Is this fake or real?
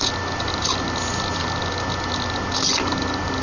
real